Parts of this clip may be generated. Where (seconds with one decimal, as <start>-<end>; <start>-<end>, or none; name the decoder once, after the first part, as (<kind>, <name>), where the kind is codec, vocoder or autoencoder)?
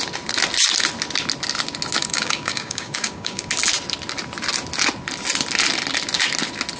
2.0-3.5 (codec, DAC)